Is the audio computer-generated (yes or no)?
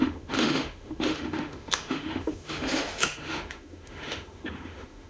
yes